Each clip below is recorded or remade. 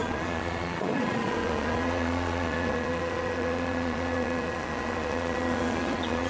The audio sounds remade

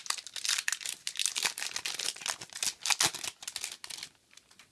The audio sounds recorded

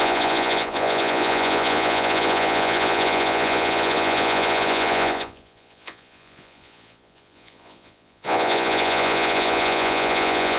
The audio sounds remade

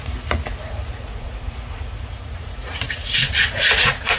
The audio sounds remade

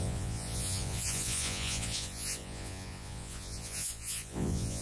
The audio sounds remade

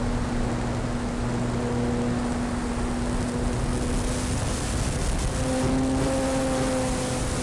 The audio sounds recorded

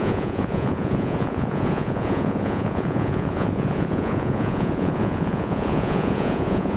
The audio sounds remade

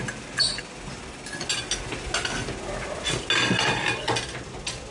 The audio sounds recorded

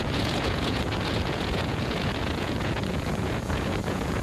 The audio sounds remade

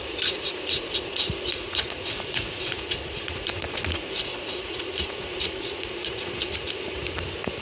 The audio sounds remade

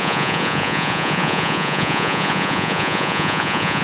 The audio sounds remade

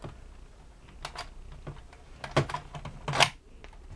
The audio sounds recorded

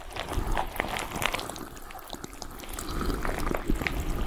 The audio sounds recorded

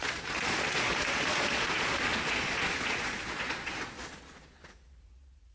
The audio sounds remade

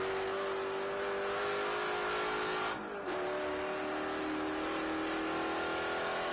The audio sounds recorded